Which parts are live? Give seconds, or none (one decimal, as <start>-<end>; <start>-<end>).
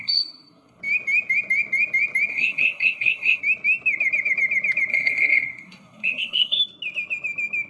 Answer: 0.8-2.3; 3.4-4.9; 6.6-7.7